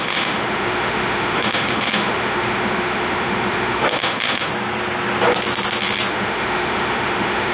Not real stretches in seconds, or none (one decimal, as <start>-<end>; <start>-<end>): 0.0-4.5; 6.1-7.5